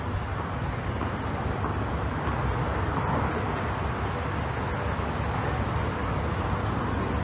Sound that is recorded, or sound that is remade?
recorded